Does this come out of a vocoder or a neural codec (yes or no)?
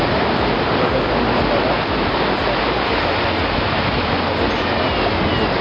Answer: no